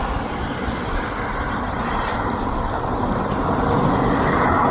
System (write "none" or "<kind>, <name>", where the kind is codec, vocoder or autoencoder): none